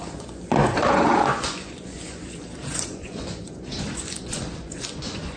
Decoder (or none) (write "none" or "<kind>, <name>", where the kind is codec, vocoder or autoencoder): vocoder, Vocos